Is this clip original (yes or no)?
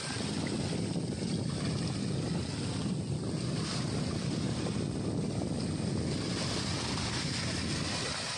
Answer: yes